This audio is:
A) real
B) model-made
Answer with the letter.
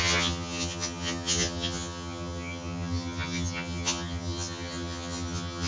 B